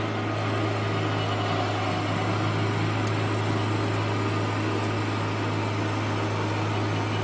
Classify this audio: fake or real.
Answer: real